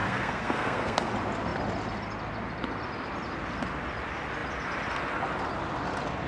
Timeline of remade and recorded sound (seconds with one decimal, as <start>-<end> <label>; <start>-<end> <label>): 0.0-1.1 remade; 1.1-6.3 recorded